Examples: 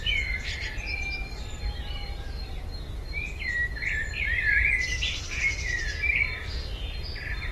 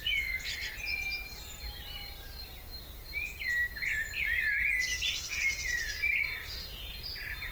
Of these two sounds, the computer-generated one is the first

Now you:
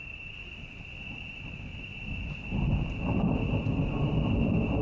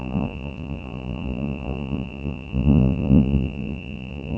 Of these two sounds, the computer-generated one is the second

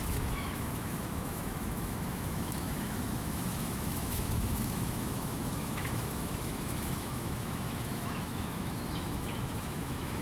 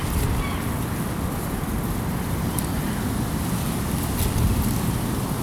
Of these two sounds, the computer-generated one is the first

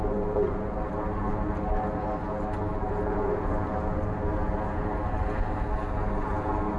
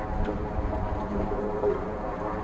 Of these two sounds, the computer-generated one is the second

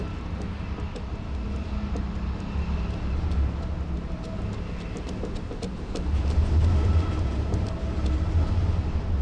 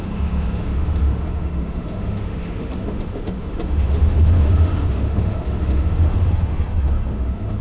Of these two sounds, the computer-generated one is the second